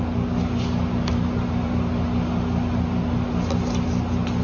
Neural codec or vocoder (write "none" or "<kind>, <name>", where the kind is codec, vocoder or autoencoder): none